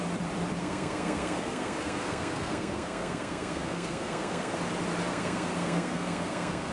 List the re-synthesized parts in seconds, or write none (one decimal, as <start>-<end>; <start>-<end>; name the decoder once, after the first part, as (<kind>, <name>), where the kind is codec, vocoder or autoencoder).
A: 0.6-4.6 (codec, SNAC); 5.1-6.7